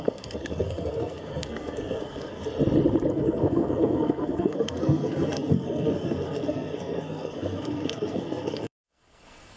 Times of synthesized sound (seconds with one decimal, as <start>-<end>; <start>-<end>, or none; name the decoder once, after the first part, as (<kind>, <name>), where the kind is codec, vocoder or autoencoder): 0.0-2.4 (codec, SNAC); 3.1-9.6